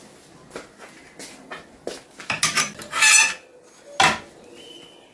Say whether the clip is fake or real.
real